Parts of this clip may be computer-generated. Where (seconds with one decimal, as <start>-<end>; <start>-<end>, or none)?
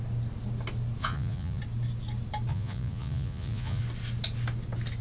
1.0-1.6; 2.5-3.8